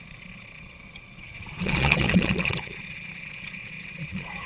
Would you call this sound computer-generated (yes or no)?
yes